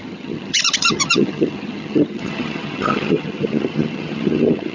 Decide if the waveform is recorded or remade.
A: remade